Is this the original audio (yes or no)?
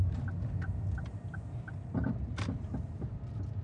yes